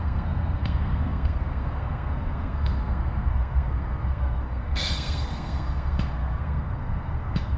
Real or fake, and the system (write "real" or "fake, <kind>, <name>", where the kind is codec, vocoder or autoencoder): fake, codec, SNAC